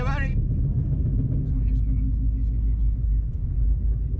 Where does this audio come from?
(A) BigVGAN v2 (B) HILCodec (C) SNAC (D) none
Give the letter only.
D